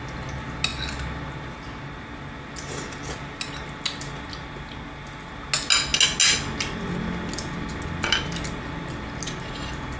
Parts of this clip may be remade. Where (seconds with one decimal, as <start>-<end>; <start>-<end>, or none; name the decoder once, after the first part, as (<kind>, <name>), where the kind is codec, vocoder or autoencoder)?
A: none